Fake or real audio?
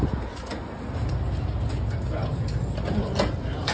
real